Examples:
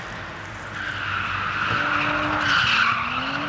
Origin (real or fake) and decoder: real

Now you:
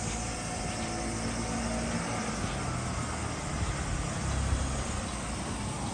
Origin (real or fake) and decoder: real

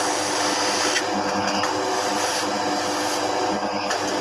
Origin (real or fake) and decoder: real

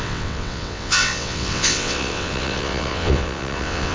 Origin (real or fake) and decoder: fake, vocoder, WaveNeXt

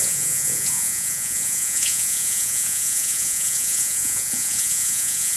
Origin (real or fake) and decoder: fake, vocoder, Vocos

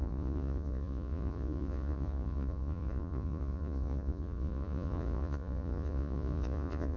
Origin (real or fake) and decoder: fake, vocoder, Vocos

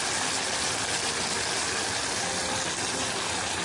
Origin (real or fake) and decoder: real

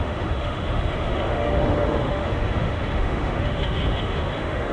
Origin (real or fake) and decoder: fake, autoencoder, DAC-VAE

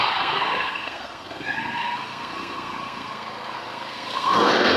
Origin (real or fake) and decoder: fake, codec, SNAC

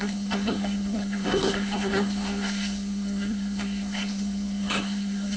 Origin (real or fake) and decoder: fake, codec, SNAC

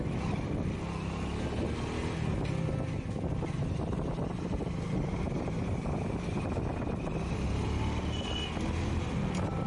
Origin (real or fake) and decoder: real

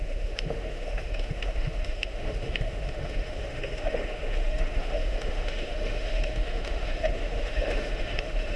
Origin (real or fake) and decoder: fake, autoencoder, DAC-VAE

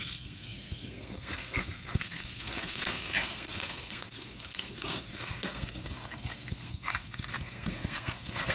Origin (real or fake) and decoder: fake, codec, SNAC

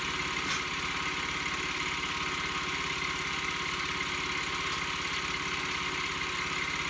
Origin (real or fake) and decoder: real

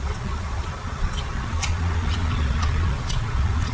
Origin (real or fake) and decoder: fake, vocoder, Vocos